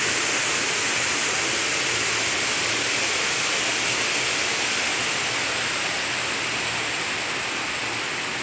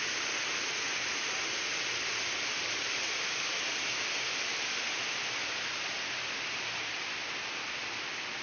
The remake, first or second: second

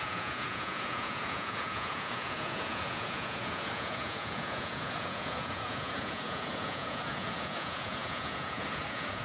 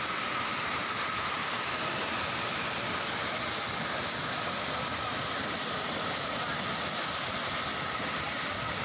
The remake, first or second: first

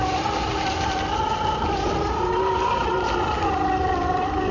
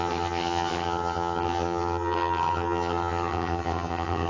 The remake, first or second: second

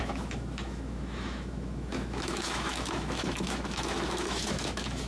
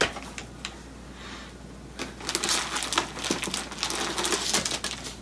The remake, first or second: first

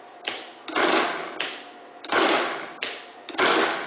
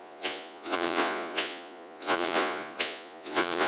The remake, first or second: second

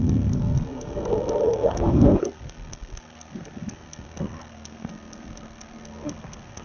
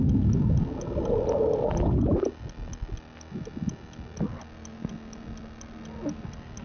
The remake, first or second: first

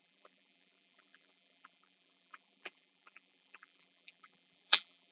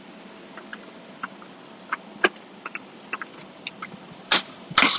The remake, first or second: first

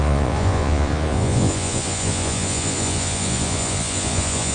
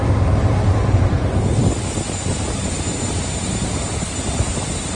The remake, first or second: first